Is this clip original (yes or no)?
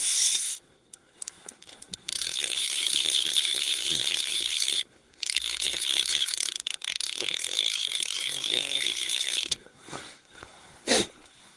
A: no